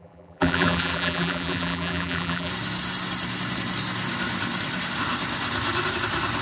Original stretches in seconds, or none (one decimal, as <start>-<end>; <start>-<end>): 2.5-6.4